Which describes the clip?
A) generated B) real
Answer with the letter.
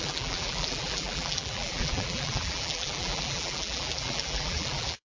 A